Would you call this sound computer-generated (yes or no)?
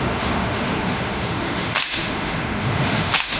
yes